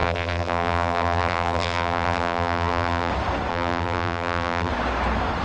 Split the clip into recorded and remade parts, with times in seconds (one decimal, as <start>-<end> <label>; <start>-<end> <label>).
0.0-3.1 remade; 3.1-3.5 recorded; 3.5-4.7 remade; 4.7-5.4 recorded